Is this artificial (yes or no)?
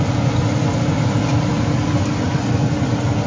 no